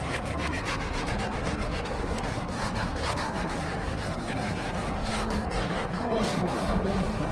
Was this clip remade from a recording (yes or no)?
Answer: yes